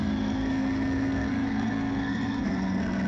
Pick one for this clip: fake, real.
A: fake